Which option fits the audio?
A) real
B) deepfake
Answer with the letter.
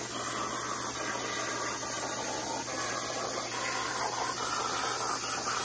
A